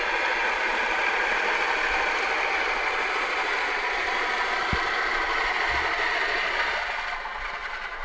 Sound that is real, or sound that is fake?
real